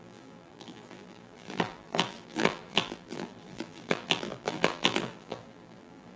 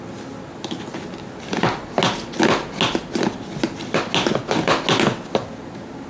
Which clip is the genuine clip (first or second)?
second